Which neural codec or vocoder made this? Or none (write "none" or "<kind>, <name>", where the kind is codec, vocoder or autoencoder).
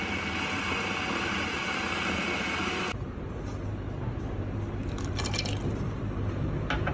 none